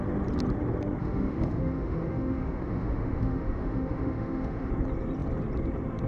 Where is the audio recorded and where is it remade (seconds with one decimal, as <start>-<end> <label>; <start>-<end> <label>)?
0.0-1.0 recorded; 1.0-4.7 remade; 4.7-6.1 recorded